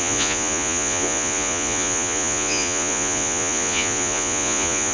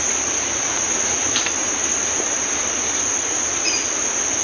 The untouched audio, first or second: second